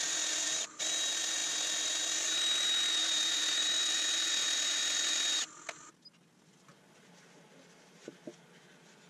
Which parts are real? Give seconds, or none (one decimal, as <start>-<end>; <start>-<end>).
0.0-9.1